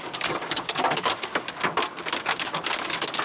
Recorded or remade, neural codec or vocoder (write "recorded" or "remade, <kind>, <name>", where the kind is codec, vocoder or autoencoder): remade, codec, DAC